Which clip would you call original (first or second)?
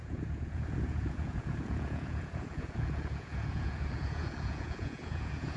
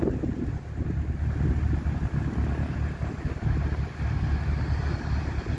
second